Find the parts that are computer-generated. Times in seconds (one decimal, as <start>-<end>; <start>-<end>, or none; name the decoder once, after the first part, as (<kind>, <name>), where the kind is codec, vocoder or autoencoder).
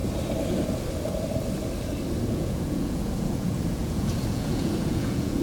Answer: 2.3-5.4 (vocoder, Vocos)